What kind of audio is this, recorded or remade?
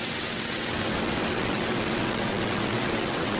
remade